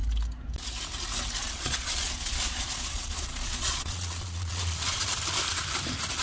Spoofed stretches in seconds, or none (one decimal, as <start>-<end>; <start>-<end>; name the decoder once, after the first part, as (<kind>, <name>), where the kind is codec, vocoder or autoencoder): 1.4-4.6 (vocoder, Vocos)

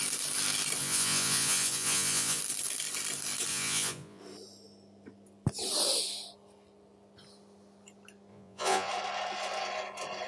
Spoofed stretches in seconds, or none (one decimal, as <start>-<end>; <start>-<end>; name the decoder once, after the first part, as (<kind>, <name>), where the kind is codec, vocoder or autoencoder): 0.8-2.4 (vocoder, Vocos); 3.5-4.2; 8.3-8.9

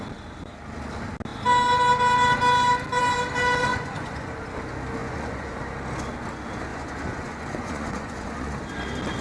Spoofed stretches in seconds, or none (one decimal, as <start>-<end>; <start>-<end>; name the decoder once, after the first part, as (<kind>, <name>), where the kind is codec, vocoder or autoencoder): 3.7-4.4 (vocoder, Vocos); 5.0-5.6; 6.7-8.5

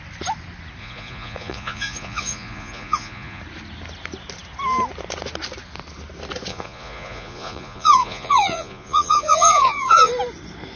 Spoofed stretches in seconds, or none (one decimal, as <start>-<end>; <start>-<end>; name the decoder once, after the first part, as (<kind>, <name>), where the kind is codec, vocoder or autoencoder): 0.8-3.4 (vocoder, Vocos); 6.5-10.1